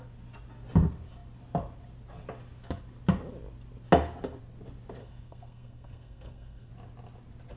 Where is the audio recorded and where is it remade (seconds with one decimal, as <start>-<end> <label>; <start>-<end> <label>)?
0.0-5.0 recorded; 5.0-6.7 remade; 6.7-7.6 recorded